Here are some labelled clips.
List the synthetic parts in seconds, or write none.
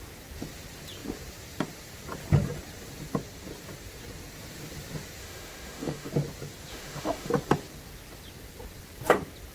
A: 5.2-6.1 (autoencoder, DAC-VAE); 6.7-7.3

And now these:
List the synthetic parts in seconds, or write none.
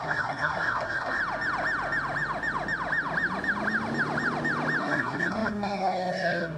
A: 0.0-1.2 (codec, SNAC); 4.8-6.6